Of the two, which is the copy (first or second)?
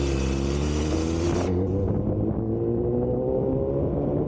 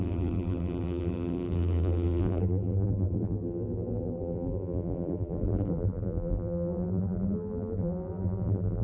second